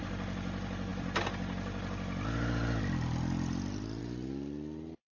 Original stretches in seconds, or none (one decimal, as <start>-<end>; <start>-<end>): 0.0-5.2